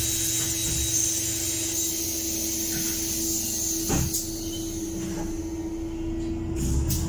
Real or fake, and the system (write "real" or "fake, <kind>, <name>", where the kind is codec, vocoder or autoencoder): real